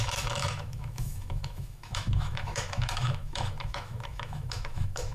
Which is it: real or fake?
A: fake